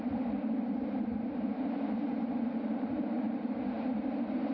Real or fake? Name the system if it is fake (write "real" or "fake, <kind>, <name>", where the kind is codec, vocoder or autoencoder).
fake, vocoder, BigVGAN v2